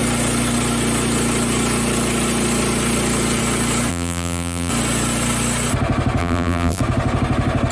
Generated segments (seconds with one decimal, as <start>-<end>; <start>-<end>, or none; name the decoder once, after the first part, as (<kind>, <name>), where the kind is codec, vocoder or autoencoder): 3.9-4.7 (vocoder, BigVGAN v2); 6.2-6.8